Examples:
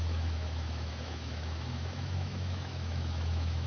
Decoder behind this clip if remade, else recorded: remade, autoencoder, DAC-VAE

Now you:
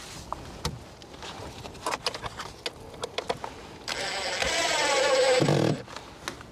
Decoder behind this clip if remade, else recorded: recorded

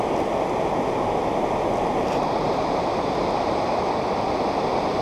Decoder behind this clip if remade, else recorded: recorded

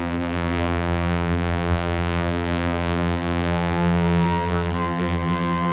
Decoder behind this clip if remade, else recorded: remade, vocoder, BigVGAN v2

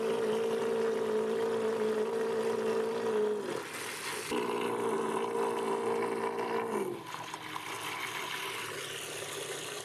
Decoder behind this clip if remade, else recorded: recorded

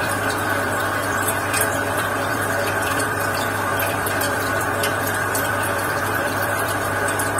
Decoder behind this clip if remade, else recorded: remade, vocoder, BigVGAN v2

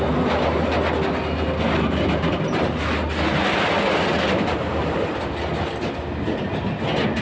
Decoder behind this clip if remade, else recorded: recorded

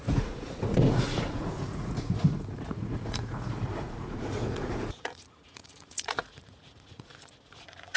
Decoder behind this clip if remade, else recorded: remade, vocoder, Vocos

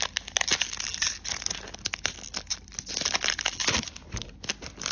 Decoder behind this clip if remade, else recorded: recorded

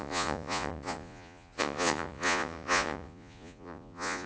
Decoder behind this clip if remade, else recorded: remade, vocoder, Vocos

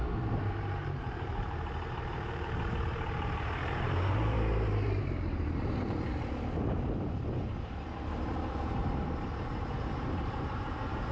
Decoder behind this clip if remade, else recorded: remade, vocoder, BigVGAN v2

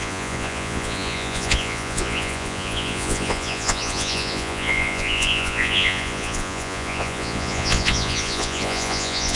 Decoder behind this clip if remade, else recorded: remade, vocoder, Vocos